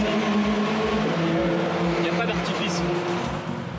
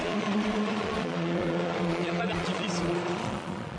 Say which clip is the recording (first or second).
first